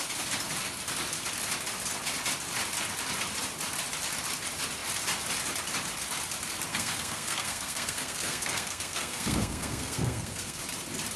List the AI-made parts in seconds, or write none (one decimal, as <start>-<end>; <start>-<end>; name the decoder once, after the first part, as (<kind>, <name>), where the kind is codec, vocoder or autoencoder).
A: 6.7-10.6 (codec, SNAC)